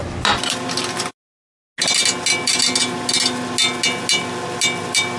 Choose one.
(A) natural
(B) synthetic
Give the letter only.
A